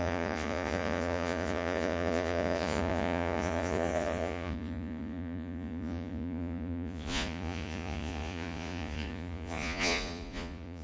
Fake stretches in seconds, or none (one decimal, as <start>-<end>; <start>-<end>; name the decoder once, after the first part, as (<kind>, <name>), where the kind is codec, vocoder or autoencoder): 0.0-10.8 (vocoder, Vocos)

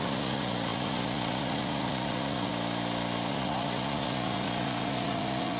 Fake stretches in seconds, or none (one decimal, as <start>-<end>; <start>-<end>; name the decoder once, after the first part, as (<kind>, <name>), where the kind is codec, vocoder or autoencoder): 0.0-2.5 (vocoder, Vocos); 3.3-5.6

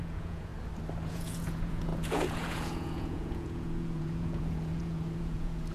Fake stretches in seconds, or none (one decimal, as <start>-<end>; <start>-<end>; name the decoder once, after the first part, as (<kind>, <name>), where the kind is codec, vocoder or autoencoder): 0.0-0.5 (vocoder, Vocos); 1.1-5.7

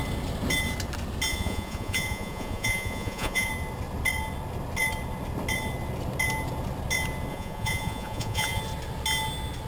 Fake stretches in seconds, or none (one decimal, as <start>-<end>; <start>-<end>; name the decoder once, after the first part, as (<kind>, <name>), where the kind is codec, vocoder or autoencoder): 1.3-3.5 (vocoder, Vocos); 7.3-8.6

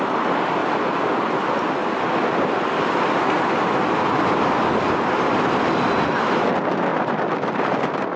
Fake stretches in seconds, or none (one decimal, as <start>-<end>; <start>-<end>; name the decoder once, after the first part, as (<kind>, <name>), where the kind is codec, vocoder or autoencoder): none